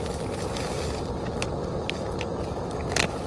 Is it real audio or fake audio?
real